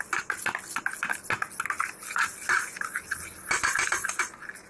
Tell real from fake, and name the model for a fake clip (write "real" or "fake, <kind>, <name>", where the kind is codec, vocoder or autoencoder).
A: real